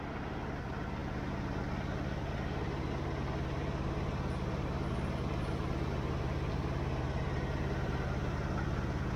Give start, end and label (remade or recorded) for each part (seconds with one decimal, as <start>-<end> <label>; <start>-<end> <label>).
0.0-9.2 recorded